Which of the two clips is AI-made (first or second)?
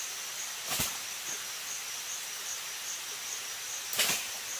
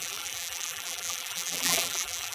second